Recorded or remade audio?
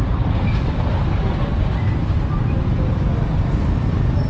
remade